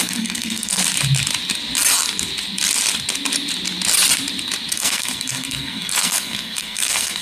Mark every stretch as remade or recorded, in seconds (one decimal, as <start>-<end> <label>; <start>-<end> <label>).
0.0-0.8 remade; 0.8-4.7 recorded; 4.7-7.2 remade